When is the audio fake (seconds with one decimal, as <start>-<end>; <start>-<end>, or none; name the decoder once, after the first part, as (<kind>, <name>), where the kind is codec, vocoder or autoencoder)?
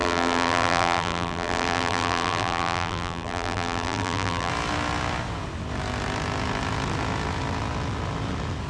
0.0-4.5 (vocoder, BigVGAN v2)